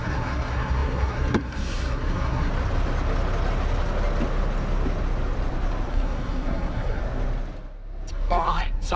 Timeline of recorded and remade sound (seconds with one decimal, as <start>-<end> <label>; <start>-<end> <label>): 0.0-2.5 remade; 2.5-5.9 recorded; 5.9-7.0 remade; 7.0-8.1 recorded; 8.1-9.0 remade